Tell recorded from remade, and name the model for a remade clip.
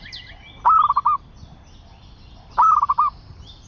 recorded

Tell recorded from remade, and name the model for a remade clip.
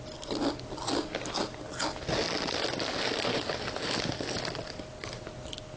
recorded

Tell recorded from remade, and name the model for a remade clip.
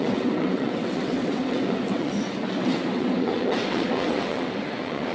remade, vocoder, WaveNeXt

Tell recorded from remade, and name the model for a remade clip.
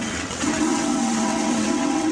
remade, vocoder, WaveNeXt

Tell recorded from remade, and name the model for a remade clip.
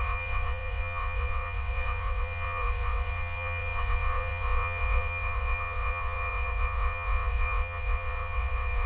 remade, vocoder, WaveNeXt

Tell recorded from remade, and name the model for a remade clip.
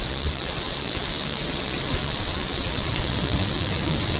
remade, vocoder, WaveNeXt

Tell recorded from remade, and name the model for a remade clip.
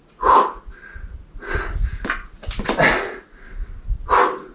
recorded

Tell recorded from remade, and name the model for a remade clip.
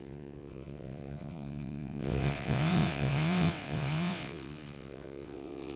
remade, vocoder, WaveNeXt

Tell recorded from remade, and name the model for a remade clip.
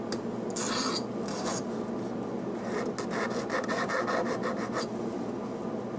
recorded